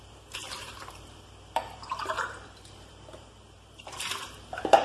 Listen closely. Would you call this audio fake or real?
fake